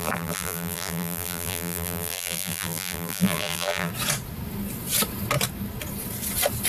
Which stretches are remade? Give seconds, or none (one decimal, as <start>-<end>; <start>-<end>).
0.0-3.9